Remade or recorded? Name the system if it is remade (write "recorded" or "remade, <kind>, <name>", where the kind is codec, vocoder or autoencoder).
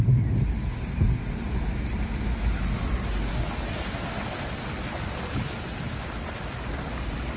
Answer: recorded